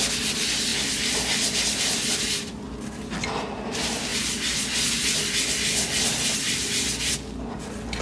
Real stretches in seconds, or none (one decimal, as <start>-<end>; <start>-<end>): 0.0-8.0